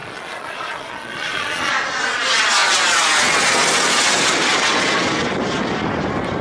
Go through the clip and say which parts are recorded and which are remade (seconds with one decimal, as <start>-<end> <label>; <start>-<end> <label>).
0.0-1.7 remade; 1.7-6.4 recorded